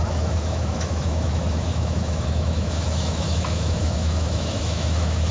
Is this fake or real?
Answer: fake